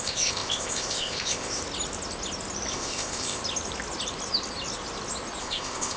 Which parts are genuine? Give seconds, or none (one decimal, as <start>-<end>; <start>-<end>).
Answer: 1.6-2.7; 3.4-5.4